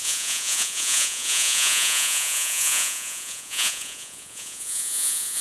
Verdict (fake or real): fake